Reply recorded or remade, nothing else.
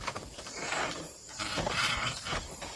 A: remade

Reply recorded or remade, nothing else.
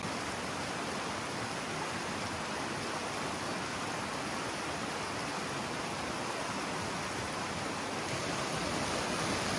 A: recorded